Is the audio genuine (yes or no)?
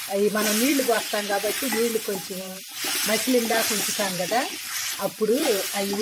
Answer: no